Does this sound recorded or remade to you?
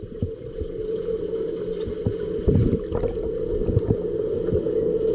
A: recorded